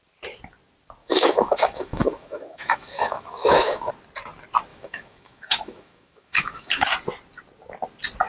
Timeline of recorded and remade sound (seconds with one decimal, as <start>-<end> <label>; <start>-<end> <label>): 0.0-1.0 recorded; 1.0-3.9 remade; 3.9-4.7 recorded; 4.7-6.9 remade; 6.9-8.3 recorded